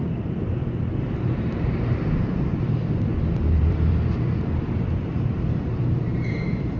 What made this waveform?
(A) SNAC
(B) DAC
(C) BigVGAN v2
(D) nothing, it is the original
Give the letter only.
C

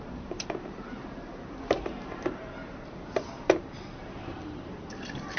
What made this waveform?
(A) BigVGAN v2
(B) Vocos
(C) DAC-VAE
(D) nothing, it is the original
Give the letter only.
A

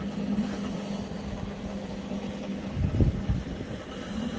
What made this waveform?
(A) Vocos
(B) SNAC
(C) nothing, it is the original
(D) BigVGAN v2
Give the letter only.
C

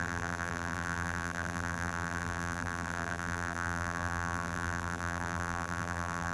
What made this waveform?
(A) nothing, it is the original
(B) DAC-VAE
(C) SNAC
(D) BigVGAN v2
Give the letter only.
D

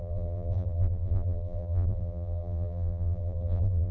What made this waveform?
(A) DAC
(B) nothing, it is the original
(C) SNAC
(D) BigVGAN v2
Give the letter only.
D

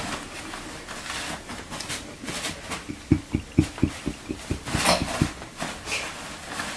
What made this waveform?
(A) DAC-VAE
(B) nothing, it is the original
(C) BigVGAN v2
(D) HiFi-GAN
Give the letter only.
B